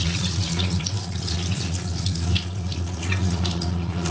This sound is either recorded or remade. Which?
remade